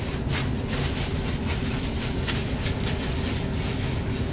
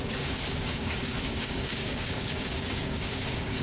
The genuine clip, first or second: first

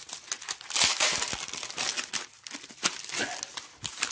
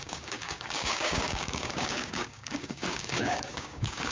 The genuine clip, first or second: first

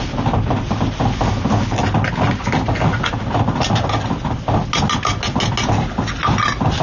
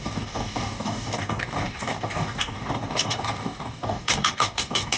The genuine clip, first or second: first